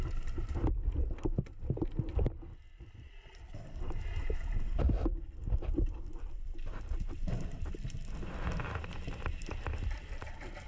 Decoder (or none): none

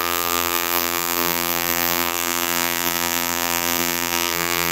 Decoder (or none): vocoder, BigVGAN v2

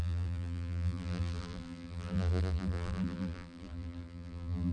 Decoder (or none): vocoder, BigVGAN v2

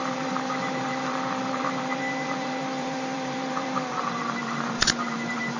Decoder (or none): vocoder, BigVGAN v2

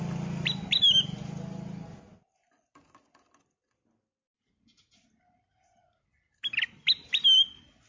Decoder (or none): none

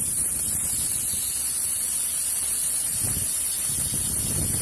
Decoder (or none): none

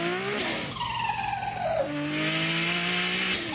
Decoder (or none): none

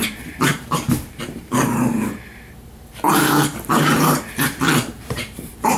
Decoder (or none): vocoder, BigVGAN v2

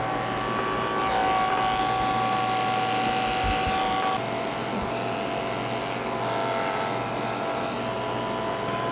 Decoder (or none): none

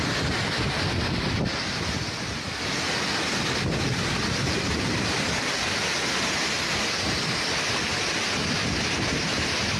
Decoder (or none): none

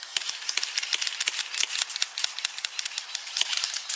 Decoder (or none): none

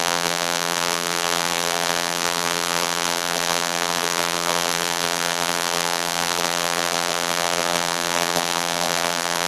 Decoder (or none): vocoder, BigVGAN v2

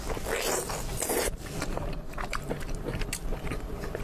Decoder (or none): vocoder, BigVGAN v2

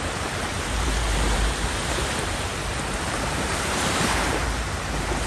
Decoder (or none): vocoder, BigVGAN v2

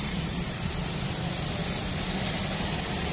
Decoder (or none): vocoder, BigVGAN v2